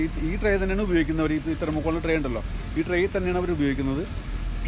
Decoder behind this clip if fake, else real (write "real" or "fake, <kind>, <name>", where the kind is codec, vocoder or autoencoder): real